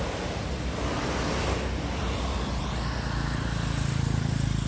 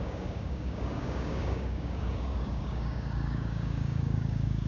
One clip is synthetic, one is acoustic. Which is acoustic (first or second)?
first